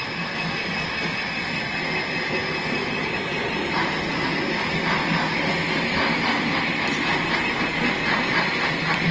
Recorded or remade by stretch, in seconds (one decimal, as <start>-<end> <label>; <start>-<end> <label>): 0.0-9.1 recorded